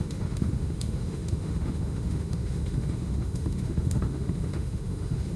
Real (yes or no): no